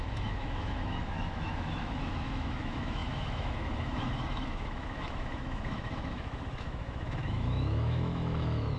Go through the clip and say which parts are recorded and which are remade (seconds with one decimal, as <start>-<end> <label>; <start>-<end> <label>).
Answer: 0.0-8.8 remade